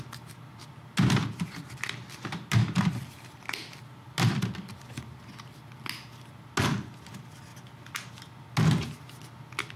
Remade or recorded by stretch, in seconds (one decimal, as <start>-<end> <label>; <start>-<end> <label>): 0.0-9.8 recorded